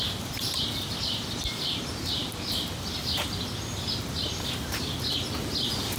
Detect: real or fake real